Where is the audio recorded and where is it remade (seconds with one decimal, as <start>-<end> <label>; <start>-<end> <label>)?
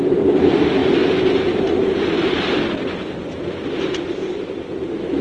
0.0-4.2 recorded; 4.2-4.7 remade; 4.7-5.2 recorded